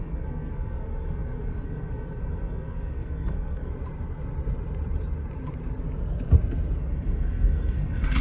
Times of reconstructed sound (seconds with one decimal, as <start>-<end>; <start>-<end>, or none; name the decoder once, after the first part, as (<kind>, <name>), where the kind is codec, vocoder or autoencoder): 0.0-3.7 (codec, SNAC); 6.8-8.2